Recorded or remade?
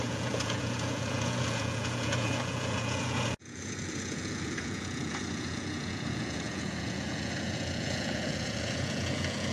remade